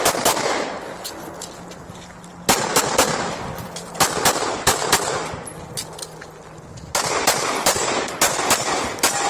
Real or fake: real